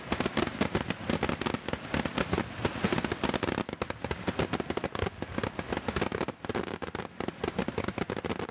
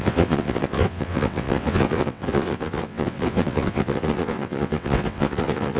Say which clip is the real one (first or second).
first